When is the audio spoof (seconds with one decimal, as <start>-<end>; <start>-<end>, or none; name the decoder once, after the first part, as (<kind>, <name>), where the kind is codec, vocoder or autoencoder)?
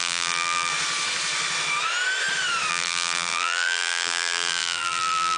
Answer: 0.0-0.7 (vocoder, BigVGAN v2); 2.7-5.4